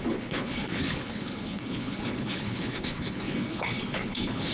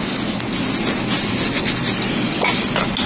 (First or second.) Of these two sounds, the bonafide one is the second